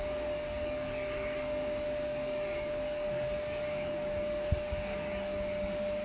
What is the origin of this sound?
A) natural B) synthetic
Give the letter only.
B